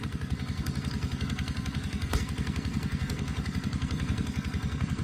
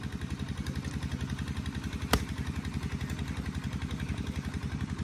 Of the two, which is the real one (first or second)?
second